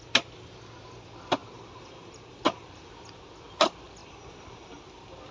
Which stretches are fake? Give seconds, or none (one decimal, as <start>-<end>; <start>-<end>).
1.4-2.9; 4.0-4.8